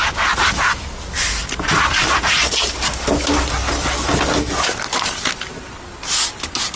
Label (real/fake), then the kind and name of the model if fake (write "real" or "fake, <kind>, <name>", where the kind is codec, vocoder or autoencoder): real